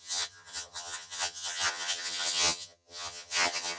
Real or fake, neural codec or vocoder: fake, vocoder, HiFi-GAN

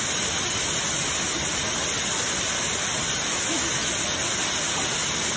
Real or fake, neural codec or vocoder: real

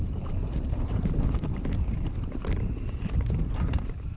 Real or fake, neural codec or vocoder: real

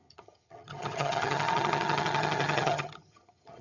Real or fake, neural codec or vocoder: fake, vocoder, HiFi-GAN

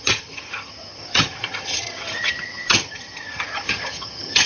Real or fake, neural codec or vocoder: fake, vocoder, HiFi-GAN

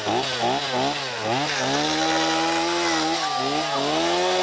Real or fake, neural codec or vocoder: real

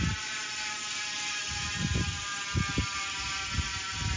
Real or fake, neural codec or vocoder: real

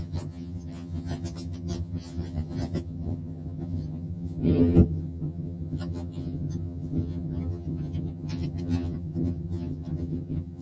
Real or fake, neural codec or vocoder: fake, vocoder, HiFi-GAN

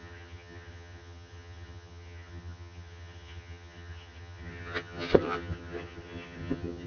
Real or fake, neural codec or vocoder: fake, vocoder, HiFi-GAN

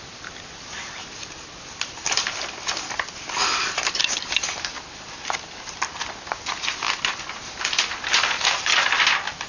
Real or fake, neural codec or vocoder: real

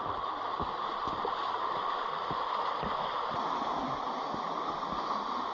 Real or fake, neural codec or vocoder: real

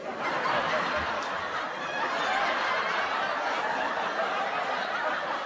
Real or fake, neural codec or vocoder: real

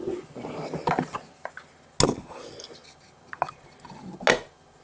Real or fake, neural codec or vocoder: real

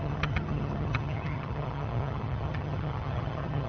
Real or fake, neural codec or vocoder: fake, vocoder, HiFi-GAN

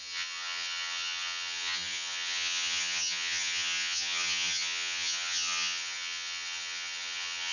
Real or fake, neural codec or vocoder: fake, vocoder, HiFi-GAN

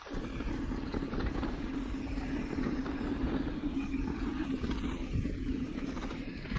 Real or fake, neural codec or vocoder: real